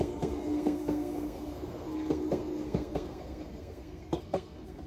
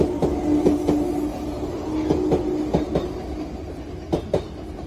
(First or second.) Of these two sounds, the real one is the second